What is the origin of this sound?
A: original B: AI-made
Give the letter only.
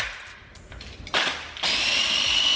B